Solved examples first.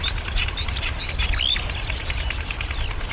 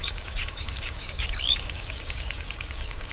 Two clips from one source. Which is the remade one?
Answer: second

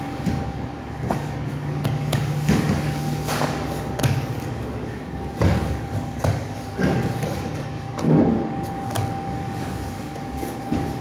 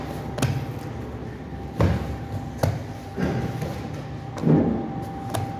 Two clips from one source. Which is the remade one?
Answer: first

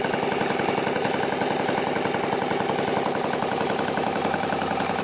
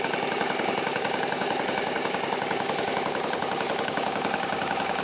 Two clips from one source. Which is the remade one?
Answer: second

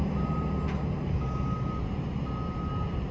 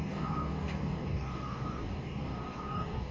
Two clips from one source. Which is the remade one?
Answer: second